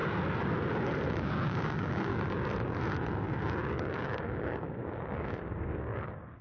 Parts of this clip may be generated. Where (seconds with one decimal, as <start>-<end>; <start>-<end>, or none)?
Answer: 1.1-2.1; 3.9-6.4